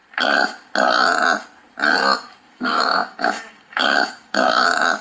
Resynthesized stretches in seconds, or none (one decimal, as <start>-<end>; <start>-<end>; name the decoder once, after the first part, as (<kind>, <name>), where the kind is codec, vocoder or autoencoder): 2.5-5.0 (codec, DAC)